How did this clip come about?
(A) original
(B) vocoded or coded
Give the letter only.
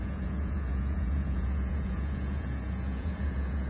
B